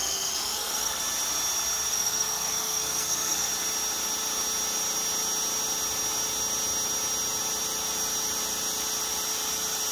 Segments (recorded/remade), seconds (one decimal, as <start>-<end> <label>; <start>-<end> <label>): 0.0-1.0 remade; 1.0-1.9 recorded; 1.9-3.5 remade; 3.5-9.9 recorded